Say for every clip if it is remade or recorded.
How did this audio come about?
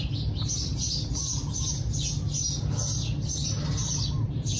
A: recorded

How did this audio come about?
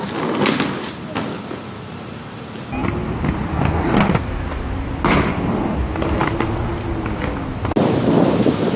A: recorded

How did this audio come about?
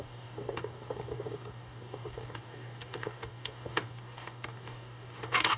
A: remade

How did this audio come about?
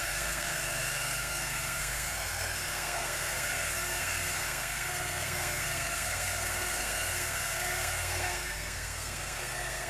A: remade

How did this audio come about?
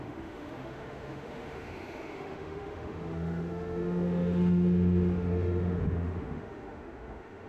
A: remade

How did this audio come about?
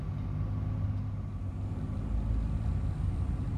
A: recorded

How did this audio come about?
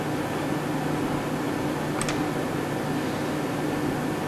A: recorded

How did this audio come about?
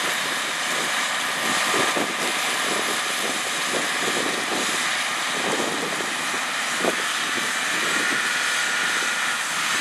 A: recorded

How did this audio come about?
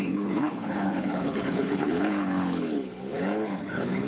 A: remade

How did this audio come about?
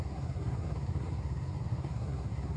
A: remade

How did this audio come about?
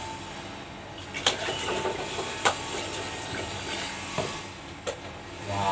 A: recorded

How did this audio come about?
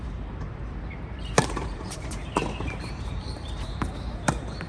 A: remade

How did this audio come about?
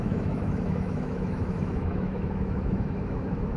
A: remade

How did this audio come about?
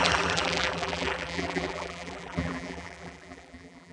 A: remade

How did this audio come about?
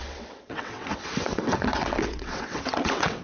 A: remade